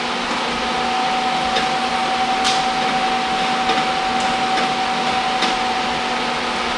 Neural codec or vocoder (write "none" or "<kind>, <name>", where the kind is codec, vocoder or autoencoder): none